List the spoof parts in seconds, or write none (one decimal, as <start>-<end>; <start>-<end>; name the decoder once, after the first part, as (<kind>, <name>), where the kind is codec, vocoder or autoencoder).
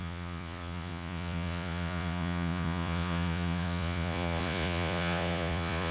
0.0-5.9 (vocoder, Vocos)